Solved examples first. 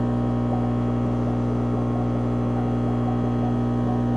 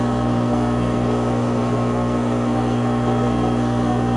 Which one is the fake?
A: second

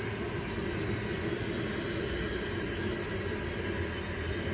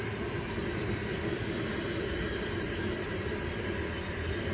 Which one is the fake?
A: second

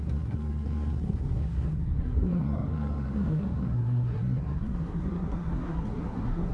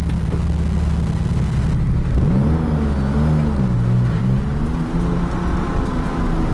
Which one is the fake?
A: first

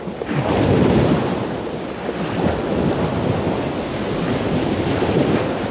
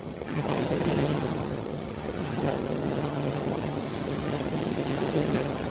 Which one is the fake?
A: second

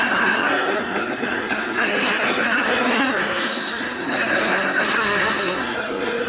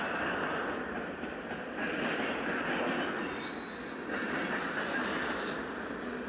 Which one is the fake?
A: first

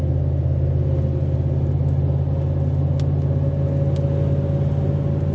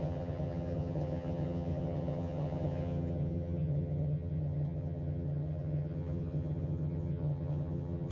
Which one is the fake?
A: second